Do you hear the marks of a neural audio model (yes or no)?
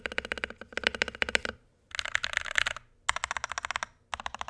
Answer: no